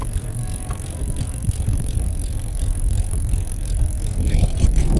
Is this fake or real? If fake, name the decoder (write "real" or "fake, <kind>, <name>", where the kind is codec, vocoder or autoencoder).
fake, codec, SNAC